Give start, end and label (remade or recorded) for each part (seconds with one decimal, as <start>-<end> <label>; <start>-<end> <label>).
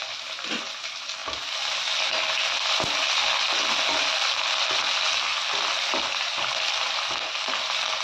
0.0-8.0 recorded